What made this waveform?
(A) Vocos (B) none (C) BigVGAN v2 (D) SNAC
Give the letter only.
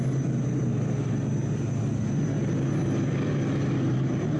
B